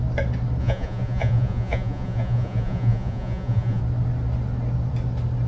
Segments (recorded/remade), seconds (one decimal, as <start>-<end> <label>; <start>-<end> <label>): 0.0-0.6 recorded; 0.6-3.8 remade; 3.8-5.5 recorded